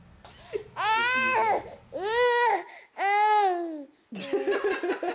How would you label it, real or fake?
real